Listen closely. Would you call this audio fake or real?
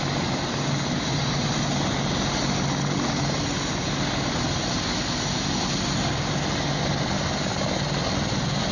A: real